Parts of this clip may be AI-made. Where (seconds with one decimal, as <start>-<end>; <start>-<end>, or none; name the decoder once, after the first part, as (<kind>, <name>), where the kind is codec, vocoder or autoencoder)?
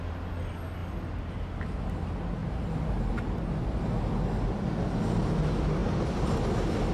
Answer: none